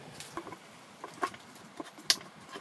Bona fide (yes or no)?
yes